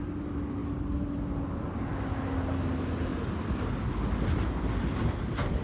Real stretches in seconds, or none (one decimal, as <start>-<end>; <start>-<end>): 0.0-5.6